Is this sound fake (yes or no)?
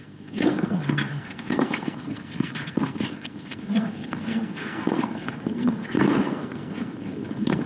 yes